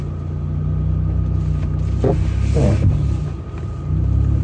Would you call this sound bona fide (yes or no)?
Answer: yes